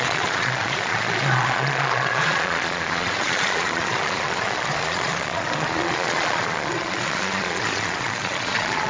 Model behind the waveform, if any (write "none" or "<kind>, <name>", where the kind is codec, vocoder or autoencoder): vocoder, Vocos